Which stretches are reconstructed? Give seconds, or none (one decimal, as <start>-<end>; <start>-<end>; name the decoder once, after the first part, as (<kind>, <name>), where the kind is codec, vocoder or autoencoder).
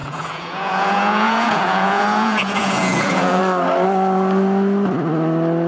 0.0-3.4 (vocoder, Vocos)